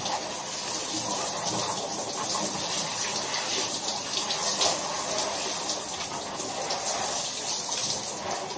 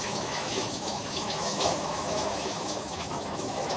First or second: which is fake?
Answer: second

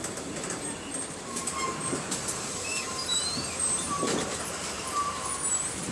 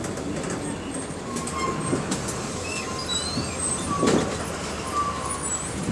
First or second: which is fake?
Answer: first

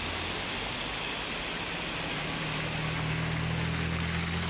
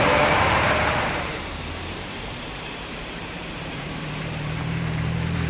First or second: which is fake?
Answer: second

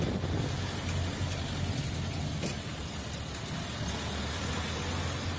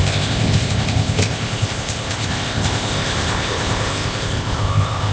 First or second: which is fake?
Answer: second